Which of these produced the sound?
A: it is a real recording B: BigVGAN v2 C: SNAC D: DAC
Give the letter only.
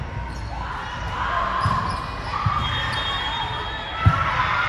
A